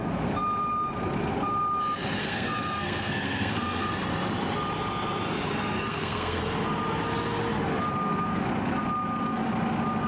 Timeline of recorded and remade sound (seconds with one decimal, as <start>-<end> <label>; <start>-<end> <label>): 0.0-2.2 recorded; 2.2-3.9 remade; 3.9-5.9 recorded; 5.9-6.4 remade; 6.4-10.1 recorded